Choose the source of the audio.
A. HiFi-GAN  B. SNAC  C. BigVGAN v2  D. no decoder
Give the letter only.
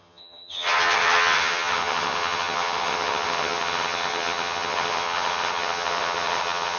A